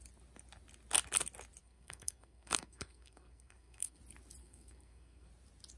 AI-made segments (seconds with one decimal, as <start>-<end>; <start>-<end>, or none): 1.6-4.0; 4.4-5.3